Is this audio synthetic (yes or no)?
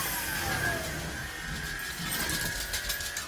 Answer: no